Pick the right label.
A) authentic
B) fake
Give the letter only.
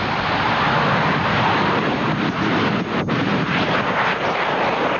A